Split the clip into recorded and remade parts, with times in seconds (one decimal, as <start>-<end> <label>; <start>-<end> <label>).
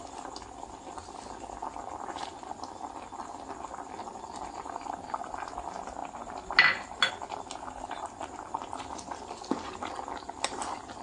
0.0-11.0 recorded